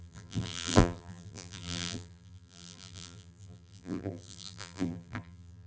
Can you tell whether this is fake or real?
fake